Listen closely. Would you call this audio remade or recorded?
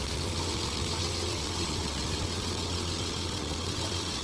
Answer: remade